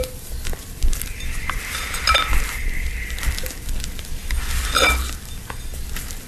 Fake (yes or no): yes